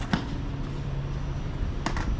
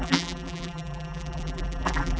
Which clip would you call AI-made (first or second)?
second